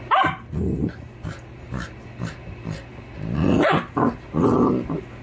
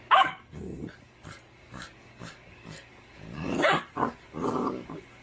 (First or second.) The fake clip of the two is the second